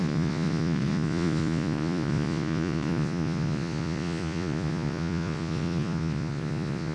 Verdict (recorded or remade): remade